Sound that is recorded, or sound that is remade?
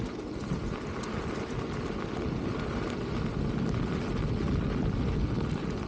recorded